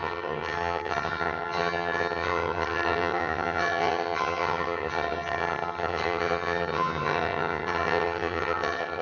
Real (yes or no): no